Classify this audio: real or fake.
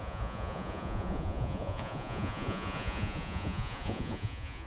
fake